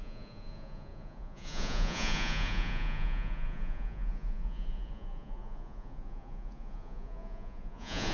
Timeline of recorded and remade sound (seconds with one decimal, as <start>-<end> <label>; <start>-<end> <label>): 0.0-8.1 remade

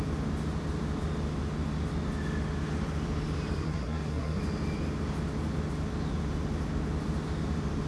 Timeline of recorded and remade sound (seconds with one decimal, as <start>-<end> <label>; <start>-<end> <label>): 0.0-3.6 recorded; 3.6-4.4 remade; 4.4-7.9 recorded

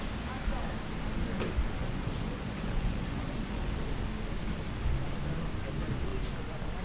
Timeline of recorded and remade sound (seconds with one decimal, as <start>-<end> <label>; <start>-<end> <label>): 0.0-1.8 recorded; 1.8-3.7 remade; 3.7-6.8 recorded

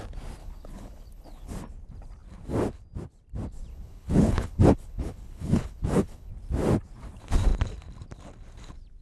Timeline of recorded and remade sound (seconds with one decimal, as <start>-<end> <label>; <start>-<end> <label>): 0.0-0.4 recorded; 0.4-1.5 remade; 1.5-3.7 recorded; 3.7-6.3 remade; 6.3-9.0 recorded